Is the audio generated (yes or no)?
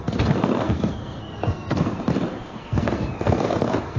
yes